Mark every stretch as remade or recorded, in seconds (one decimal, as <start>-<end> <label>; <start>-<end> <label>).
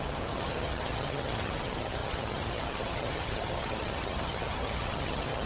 0.0-5.5 remade